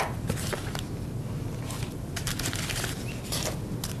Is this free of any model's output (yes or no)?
yes